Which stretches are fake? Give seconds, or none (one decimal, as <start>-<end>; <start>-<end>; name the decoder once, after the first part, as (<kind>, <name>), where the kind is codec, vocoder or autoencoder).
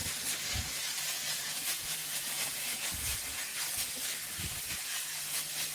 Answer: 1.0-3.5 (vocoder, Vocos); 4.7-5.7